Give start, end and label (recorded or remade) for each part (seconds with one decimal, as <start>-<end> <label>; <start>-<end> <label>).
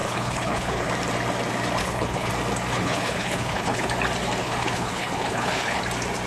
0.0-0.9 remade; 0.9-1.8 recorded; 1.8-2.3 remade; 2.3-2.7 recorded; 2.7-3.9 remade; 3.9-4.4 recorded; 4.4-5.8 remade; 5.8-6.3 recorded